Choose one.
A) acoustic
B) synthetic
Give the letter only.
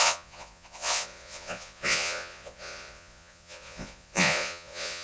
B